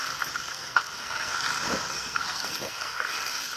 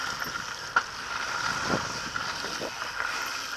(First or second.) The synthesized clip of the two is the first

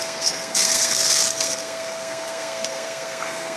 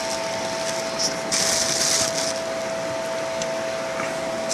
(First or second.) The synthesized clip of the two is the first